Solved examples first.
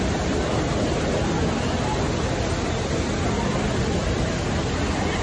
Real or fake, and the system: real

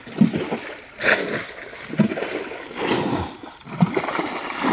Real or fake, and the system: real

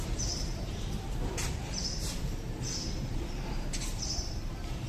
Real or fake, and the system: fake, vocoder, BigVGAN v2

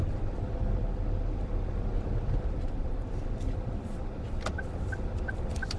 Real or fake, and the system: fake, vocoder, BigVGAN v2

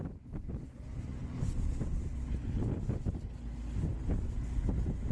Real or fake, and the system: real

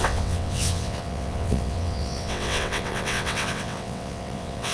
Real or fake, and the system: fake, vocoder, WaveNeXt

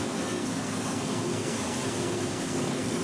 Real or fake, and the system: fake, codec, SNAC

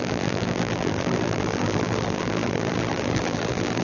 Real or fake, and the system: fake, vocoder, BigVGAN v2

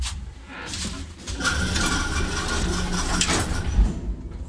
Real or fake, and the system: real